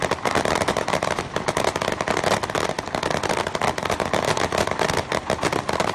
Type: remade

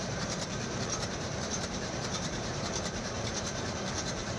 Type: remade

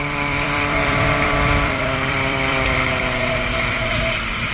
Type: remade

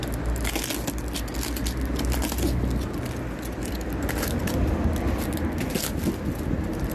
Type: recorded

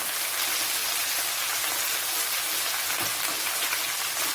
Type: recorded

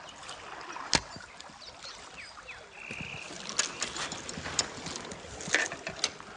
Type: recorded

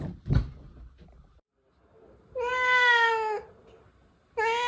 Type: recorded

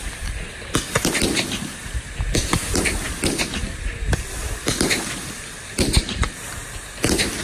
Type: recorded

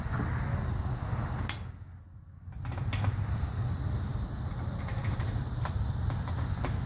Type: recorded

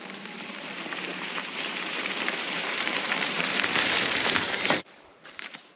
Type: remade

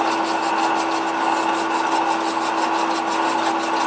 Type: recorded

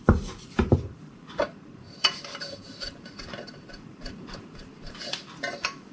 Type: remade